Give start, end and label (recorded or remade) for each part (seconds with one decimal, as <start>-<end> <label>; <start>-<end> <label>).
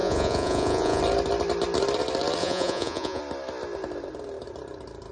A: 0.0-1.0 remade; 1.0-2.4 recorded; 2.4-3.2 remade; 3.2-5.1 recorded